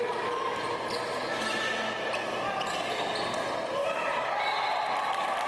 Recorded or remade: recorded